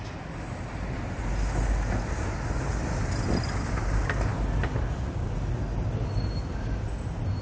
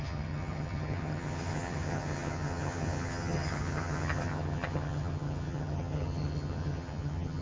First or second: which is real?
first